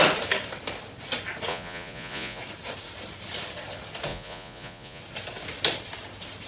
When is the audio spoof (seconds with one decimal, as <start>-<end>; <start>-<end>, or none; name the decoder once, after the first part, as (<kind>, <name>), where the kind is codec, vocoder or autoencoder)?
1.5-2.4 (vocoder, Vocos); 4.1-5.0